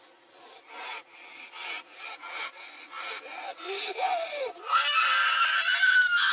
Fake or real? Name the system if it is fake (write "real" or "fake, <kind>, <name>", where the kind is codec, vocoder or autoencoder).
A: real